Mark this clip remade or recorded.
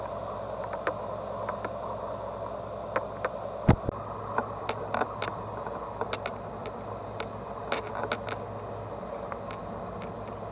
recorded